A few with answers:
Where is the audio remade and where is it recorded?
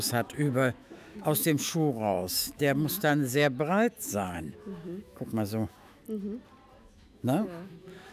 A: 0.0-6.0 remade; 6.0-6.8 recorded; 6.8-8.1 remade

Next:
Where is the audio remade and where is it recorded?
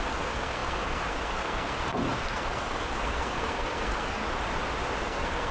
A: 0.0-4.2 remade; 4.2-5.0 recorded; 5.0-5.5 remade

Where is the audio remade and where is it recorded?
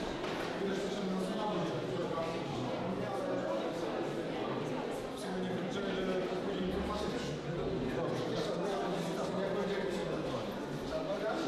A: 0.0-11.5 recorded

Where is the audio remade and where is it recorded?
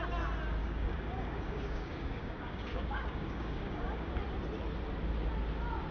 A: 0.0-0.6 recorded; 0.6-4.1 remade; 4.1-5.9 recorded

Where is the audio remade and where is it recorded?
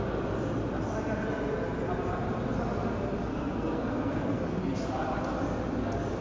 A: 0.0-3.3 recorded; 3.3-4.6 remade; 4.6-6.2 recorded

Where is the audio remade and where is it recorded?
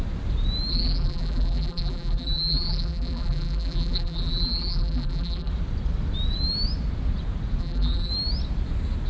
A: 0.0-0.7 recorded; 0.7-5.5 remade; 5.5-7.6 recorded; 7.6-8.1 remade; 8.1-9.1 recorded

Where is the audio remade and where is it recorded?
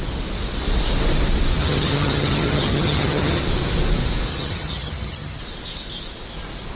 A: 0.0-1.6 recorded; 1.6-3.4 remade; 3.4-4.3 recorded; 4.3-5.4 remade; 5.4-6.8 recorded